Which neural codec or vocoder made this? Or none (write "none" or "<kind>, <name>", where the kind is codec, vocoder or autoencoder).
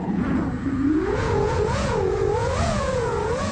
vocoder, Vocos